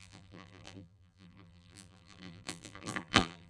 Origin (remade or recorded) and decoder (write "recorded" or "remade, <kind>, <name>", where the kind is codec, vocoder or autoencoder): remade, vocoder, BigVGAN v2